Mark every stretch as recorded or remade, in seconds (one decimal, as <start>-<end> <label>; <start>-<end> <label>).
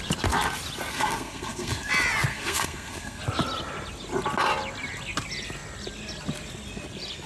0.0-0.9 recorded; 0.9-1.9 remade; 1.9-2.3 recorded; 2.3-3.2 remade; 3.2-7.3 recorded